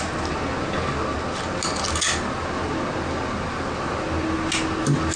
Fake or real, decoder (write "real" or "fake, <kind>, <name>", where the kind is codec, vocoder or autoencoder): real